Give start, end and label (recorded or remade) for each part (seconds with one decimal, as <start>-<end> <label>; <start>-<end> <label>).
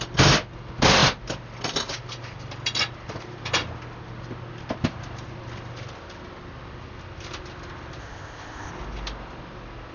0.0-8.0 recorded; 8.0-8.7 remade; 8.7-9.9 recorded